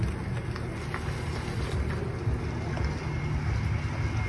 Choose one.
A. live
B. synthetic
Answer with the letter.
A